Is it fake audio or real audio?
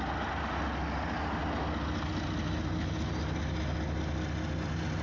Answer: real